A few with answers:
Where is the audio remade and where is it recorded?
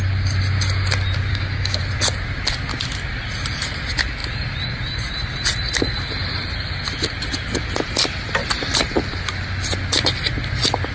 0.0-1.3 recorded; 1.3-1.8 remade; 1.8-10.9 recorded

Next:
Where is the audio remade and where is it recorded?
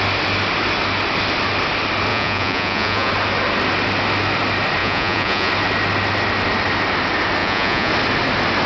0.0-2.1 recorded; 2.1-3.1 remade; 3.1-4.8 recorded; 4.8-5.5 remade; 5.5-7.4 recorded; 7.4-7.9 remade; 7.9-8.7 recorded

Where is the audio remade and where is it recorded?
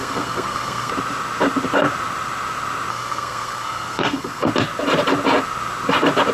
0.0-0.9 remade; 0.9-2.9 recorded; 2.9-4.5 remade; 4.5-6.3 recorded